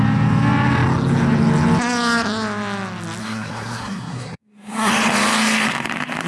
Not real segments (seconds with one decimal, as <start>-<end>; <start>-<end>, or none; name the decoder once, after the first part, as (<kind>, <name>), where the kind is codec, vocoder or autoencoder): 3.2-4.9 (codec, SNAC)

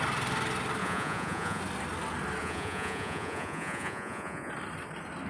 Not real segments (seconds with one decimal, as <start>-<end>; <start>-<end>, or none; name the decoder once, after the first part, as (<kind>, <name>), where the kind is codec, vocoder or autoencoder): 0.8-1.6 (vocoder, Vocos); 2.4-4.5

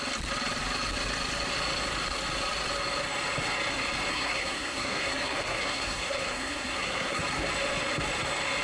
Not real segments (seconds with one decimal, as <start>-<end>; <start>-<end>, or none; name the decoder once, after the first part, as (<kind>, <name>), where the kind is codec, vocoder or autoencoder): 4.1-7.2 (codec, SNAC)

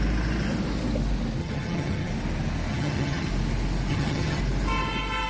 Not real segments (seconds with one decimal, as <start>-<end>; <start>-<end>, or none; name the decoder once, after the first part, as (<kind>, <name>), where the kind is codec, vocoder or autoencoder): 1.4-2.1 (vocoder, HiFi-GAN); 2.7-3.3; 3.9-4.4

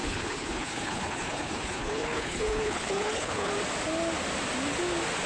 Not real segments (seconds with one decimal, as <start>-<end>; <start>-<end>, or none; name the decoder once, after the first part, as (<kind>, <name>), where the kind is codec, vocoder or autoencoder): 0.0-3.5 (codec, HILCodec)

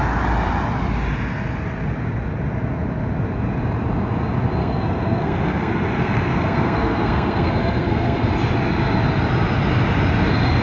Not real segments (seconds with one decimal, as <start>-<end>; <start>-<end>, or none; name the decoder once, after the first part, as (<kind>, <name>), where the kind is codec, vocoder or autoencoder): 4.6-8.3 (codec, SNAC)

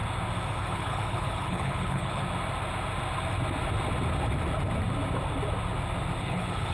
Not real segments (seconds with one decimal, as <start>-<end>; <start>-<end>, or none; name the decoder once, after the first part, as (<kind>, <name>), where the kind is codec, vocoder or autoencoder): 0.6-2.2 (codec, HILCodec); 6.2-6.7